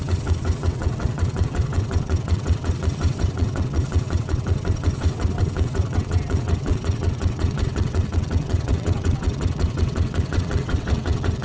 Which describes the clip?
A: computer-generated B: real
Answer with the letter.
A